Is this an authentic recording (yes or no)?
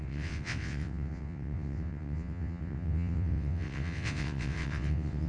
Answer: no